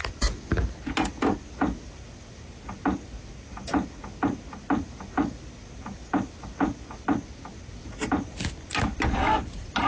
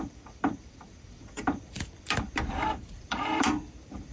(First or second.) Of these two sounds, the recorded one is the first